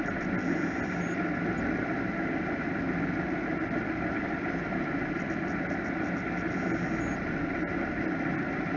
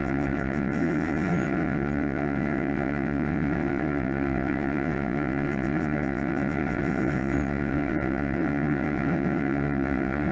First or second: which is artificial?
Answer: second